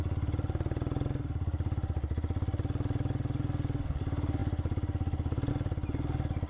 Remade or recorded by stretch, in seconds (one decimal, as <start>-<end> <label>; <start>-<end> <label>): 0.0-6.5 recorded